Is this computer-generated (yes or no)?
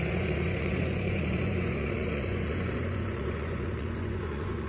yes